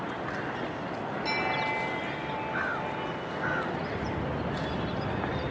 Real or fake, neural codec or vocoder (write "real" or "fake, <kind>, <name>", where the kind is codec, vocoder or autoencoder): real